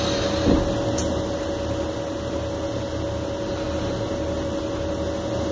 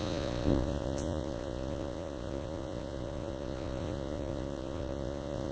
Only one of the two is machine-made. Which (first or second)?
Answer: second